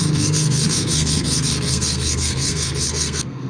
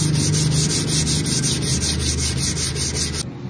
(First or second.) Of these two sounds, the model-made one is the first